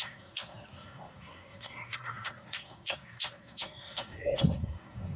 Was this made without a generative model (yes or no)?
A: no